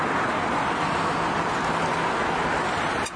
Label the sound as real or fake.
real